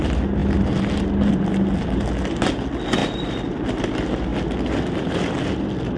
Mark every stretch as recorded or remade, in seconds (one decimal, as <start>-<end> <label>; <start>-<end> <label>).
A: 0.0-6.0 recorded